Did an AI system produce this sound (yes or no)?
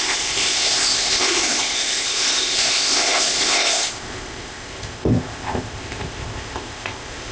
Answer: yes